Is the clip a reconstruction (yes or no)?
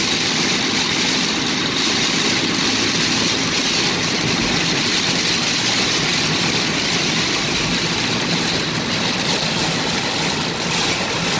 no